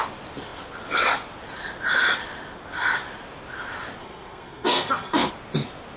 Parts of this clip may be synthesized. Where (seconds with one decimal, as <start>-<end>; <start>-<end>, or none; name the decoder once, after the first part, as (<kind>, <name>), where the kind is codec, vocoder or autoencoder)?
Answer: 4.0-5.3 (codec, SNAC)